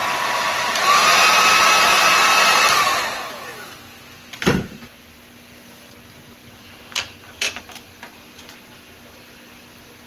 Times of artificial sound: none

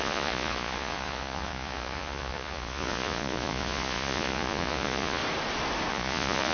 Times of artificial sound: 0.0-5.2 (vocoder, Vocos); 5.9-6.5

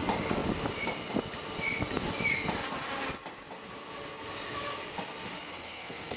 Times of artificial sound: 5.5-6.2 (codec, SNAC)